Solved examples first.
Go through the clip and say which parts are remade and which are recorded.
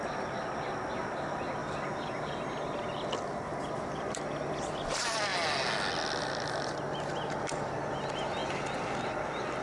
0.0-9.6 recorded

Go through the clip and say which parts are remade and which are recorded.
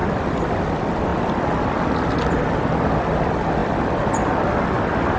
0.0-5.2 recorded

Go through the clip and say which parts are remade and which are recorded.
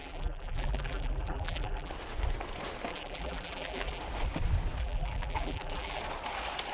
0.0-1.9 remade; 1.9-2.9 recorded; 2.9-4.0 remade; 4.0-4.8 recorded; 4.8-6.0 remade; 6.0-6.7 recorded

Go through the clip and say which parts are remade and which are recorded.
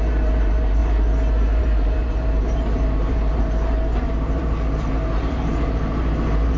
0.0-0.8 remade; 0.8-1.6 recorded; 1.6-6.6 remade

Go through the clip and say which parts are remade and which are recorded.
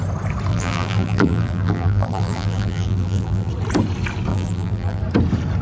0.0-0.5 recorded; 0.5-3.5 remade; 3.5-4.3 recorded; 4.3-5.0 remade; 5.0-5.6 recorded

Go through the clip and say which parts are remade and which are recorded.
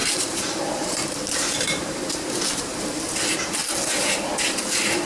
0.0-3.1 remade; 3.1-5.1 recorded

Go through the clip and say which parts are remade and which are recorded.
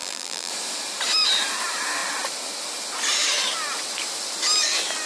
0.0-0.5 remade; 0.5-5.1 recorded